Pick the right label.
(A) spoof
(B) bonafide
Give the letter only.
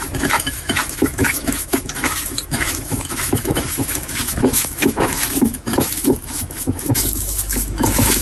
A